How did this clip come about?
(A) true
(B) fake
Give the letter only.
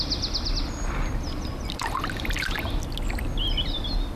A